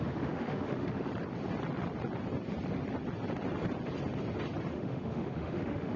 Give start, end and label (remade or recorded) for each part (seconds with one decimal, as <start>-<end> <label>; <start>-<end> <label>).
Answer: 0.0-1.1 remade; 1.1-4.7 recorded; 4.7-6.0 remade